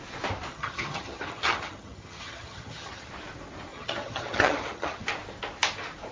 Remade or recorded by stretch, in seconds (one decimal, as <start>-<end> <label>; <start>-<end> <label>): 0.0-0.5 recorded; 0.5-3.1 remade; 3.1-3.7 recorded; 3.7-5.0 remade; 5.0-6.1 recorded